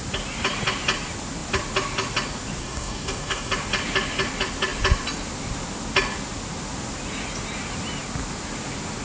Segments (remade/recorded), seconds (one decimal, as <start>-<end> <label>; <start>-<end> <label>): 0.0-2.6 recorded; 2.6-3.5 remade; 3.5-9.0 recorded